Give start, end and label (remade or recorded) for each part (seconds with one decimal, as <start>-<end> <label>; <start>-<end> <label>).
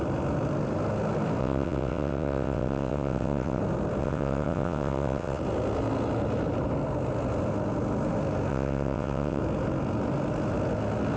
0.0-1.4 recorded; 1.4-3.6 remade; 3.6-4.0 recorded; 4.0-5.4 remade; 5.4-8.5 recorded; 8.5-9.4 remade; 9.4-11.2 recorded